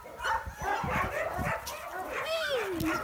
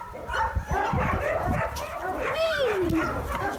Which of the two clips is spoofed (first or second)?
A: second